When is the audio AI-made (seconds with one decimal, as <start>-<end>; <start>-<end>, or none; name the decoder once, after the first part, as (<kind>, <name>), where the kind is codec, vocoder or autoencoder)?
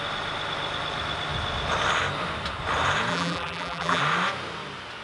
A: 3.1-4.0 (vocoder, BigVGAN v2)